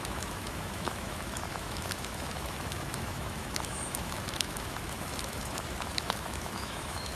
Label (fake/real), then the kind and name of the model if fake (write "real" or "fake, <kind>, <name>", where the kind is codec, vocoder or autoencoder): fake, autoencoder, DAC-VAE